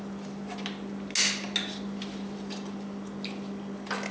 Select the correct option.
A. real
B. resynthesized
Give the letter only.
A